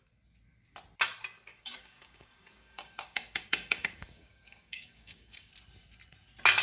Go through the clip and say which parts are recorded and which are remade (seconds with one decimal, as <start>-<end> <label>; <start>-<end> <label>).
0.0-1.5 recorded; 1.5-5.5 remade; 5.5-6.6 recorded